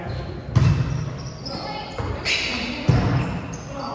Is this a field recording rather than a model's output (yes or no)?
yes